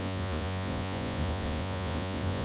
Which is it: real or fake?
fake